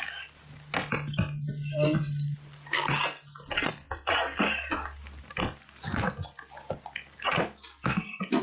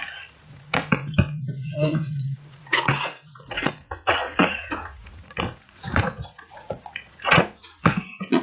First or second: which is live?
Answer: first